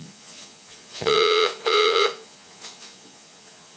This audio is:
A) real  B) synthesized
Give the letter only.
B